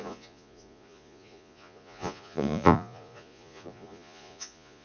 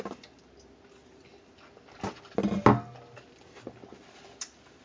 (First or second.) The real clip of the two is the second